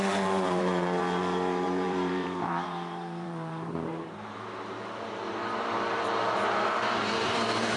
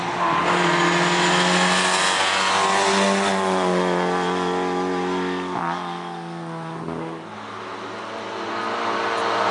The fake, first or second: first